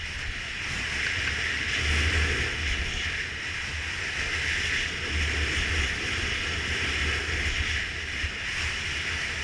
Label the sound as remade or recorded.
recorded